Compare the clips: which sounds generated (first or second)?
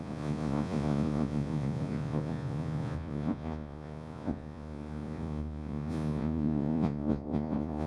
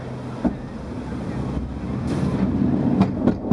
first